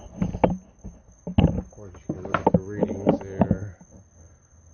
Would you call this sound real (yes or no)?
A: yes